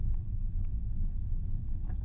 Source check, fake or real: real